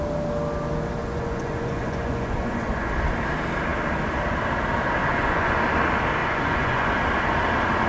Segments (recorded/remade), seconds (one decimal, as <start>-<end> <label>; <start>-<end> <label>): 0.0-1.0 recorded; 1.0-2.9 remade; 2.9-5.0 recorded; 5.0-5.6 remade; 5.6-6.2 recorded; 6.2-7.0 remade; 7.0-7.9 recorded